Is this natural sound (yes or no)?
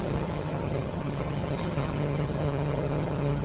no